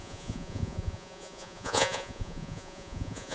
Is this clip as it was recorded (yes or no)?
no